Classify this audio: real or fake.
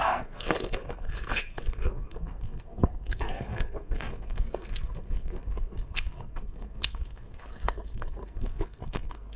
fake